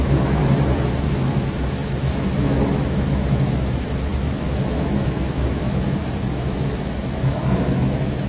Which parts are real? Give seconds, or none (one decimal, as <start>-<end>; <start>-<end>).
0.4-1.0